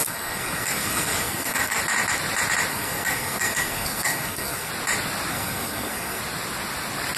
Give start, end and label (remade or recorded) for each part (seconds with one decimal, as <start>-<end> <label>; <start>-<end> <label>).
0.0-1.8 remade; 1.8-2.7 recorded; 2.7-4.7 remade; 4.7-5.3 recorded; 5.3-6.2 remade; 6.2-7.2 recorded